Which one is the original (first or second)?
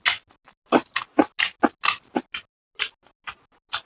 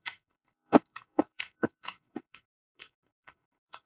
first